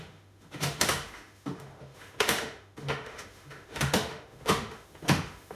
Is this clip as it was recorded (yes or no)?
no